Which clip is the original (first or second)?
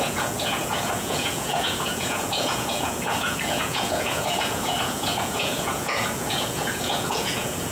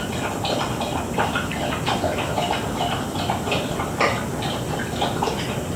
second